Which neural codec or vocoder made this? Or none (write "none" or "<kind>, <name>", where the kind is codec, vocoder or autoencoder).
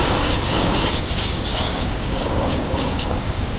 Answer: codec, DAC